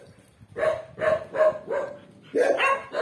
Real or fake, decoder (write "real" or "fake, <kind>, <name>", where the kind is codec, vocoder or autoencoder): real